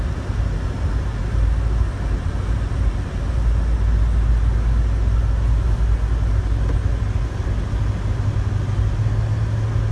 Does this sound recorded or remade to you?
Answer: recorded